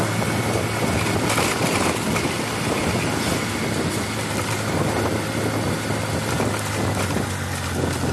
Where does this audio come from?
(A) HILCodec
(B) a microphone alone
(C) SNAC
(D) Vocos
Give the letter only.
B